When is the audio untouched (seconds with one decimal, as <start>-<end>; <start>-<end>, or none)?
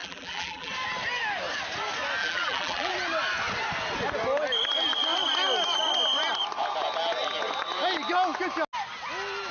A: 0.7-2.2; 2.9-9.5